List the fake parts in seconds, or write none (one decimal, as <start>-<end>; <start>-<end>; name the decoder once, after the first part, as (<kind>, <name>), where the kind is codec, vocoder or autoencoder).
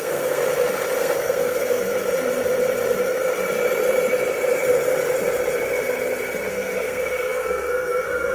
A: 0.0-0.4 (codec, SNAC); 1.0-1.9; 6.5-8.3